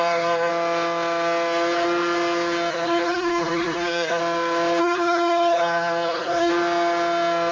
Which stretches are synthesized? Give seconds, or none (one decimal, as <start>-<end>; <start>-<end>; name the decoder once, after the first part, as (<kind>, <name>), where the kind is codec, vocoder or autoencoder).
0.0-0.5 (codec, SNAC); 2.7-4.2; 4.8-6.5